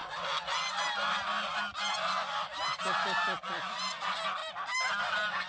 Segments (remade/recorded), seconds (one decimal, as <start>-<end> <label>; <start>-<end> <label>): 0.0-5.5 recorded